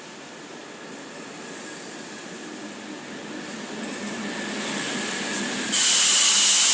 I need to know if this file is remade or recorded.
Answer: recorded